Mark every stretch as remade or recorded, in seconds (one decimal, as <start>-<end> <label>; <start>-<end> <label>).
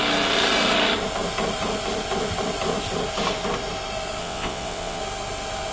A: 0.0-4.2 recorded; 4.2-5.0 remade; 5.0-5.7 recorded